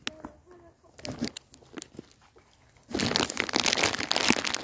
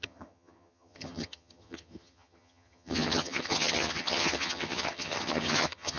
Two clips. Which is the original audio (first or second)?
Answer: first